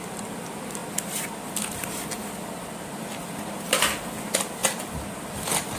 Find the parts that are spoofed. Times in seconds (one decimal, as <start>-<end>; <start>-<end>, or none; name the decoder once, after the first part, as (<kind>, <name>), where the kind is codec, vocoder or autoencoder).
none